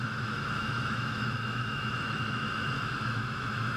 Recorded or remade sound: remade